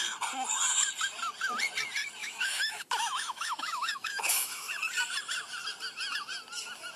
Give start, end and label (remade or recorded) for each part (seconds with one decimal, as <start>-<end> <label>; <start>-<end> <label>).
0.0-2.2 recorded; 2.2-4.7 remade; 4.7-7.0 recorded

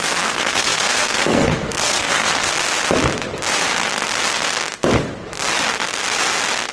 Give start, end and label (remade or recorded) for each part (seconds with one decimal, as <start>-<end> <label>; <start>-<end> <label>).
0.0-2.5 remade; 2.5-6.7 recorded

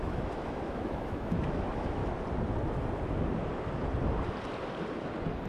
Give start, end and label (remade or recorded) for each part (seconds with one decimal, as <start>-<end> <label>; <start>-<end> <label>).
0.0-2.0 remade; 2.0-5.5 recorded

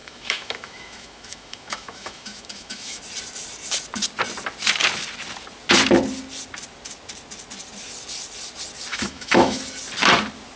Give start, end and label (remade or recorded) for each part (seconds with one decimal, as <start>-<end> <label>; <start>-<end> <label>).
0.0-3.0 remade; 3.0-8.9 recorded; 8.9-9.6 remade; 9.6-10.6 recorded

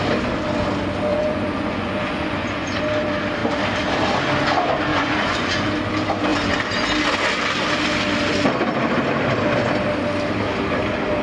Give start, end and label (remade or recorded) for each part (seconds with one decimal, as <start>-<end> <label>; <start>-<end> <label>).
0.0-1.1 recorded; 1.1-2.8 remade; 2.8-4.9 recorded; 4.9-5.7 remade; 5.7-11.2 recorded

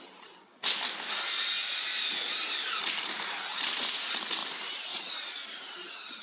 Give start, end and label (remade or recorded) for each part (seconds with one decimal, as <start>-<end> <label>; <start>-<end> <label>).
0.0-6.2 recorded

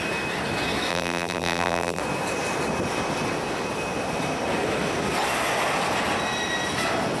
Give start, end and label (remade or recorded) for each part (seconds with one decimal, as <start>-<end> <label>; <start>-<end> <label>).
0.0-0.9 recorded; 0.9-2.0 remade; 2.0-7.2 recorded

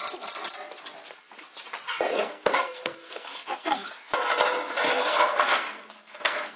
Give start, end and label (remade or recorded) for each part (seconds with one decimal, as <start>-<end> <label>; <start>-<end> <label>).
0.0-2.1 recorded; 2.1-3.9 remade; 3.9-4.9 recorded; 4.9-6.6 remade